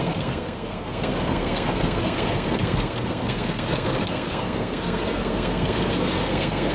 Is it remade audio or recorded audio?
remade